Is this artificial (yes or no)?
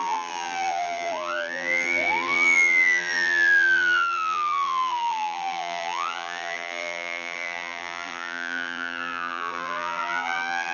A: yes